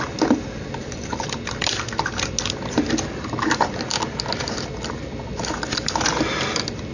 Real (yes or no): yes